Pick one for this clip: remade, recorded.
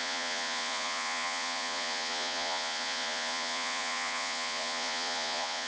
remade